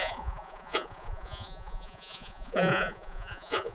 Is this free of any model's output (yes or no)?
no